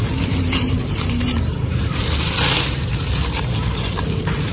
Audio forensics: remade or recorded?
remade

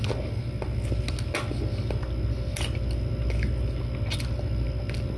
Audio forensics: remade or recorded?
recorded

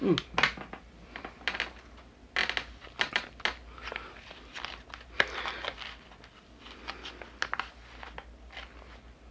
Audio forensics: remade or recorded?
recorded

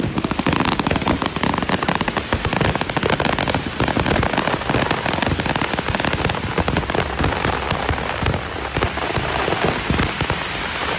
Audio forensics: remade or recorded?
recorded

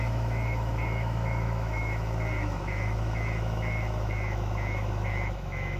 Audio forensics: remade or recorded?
remade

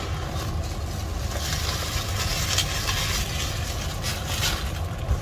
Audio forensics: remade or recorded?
recorded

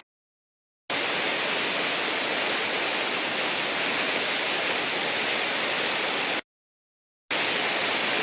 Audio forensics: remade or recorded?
recorded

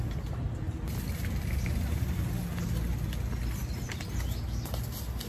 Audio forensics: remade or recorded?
recorded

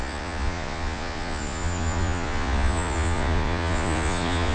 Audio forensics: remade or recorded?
remade